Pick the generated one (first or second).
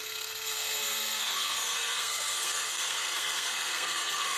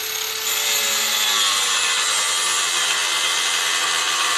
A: first